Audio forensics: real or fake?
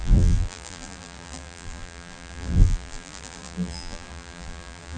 fake